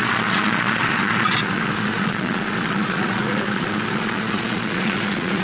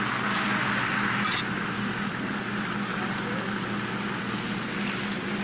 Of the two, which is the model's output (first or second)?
first